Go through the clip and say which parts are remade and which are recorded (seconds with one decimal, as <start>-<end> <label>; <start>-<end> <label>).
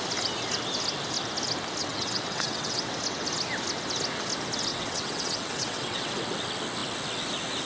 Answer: 0.0-1.8 recorded; 1.8-2.9 remade; 2.9-4.7 recorded; 4.7-6.1 remade; 6.1-7.7 recorded